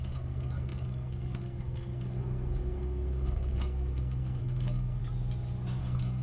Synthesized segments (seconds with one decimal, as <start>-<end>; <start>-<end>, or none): 0.0-5.0; 5.8-6.2